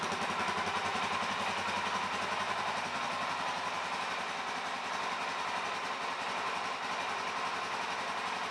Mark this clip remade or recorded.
recorded